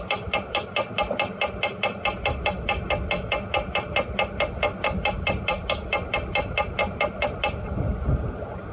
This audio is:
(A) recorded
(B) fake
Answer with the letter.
A